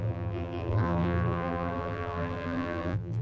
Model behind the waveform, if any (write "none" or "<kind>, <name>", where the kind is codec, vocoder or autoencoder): vocoder, BigVGAN v2